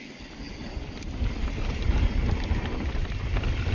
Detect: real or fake fake